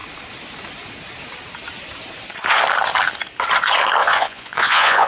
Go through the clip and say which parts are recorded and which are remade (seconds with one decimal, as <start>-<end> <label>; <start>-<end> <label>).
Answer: 0.0-4.0 recorded; 4.0-5.1 remade